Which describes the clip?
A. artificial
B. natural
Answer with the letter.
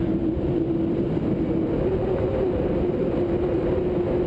B